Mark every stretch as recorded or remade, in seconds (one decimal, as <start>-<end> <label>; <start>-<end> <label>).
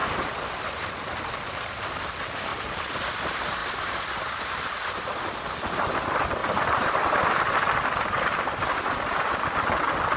0.0-10.2 recorded